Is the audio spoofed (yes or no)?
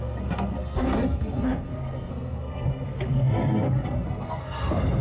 yes